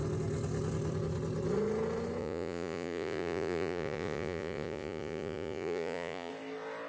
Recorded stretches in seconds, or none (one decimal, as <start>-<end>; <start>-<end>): 0.0-2.2; 6.3-6.9